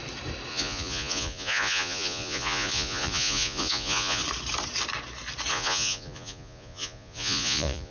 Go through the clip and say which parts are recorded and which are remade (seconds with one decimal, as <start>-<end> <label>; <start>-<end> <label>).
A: 0.0-0.5 recorded; 0.5-4.2 remade; 4.2-5.5 recorded; 5.5-7.9 remade